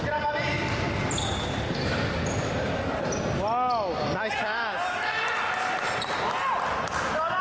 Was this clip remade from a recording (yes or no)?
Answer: no